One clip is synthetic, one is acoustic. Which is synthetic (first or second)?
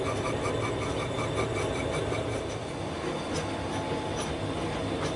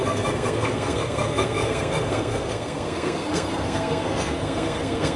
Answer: second